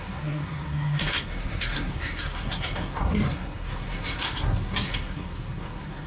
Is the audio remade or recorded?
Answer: remade